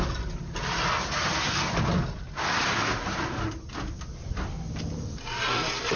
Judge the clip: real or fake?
real